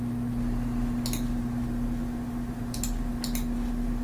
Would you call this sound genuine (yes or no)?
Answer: yes